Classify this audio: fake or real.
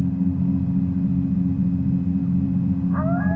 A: real